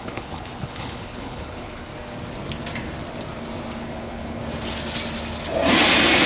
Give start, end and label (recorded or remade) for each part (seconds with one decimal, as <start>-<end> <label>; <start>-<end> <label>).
0.0-1.9 remade; 1.9-3.8 recorded; 3.8-4.4 remade; 4.4-6.3 recorded